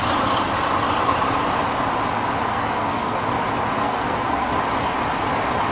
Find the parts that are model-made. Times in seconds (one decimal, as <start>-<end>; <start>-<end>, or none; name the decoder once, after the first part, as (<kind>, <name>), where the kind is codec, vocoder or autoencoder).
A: 2.5-3.2 (codec, SNAC); 3.8-4.5